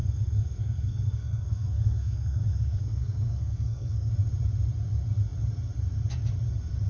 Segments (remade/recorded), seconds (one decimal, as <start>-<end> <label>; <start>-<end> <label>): 0.0-4.1 remade; 4.1-6.9 recorded